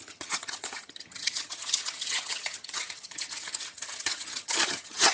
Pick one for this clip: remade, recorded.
remade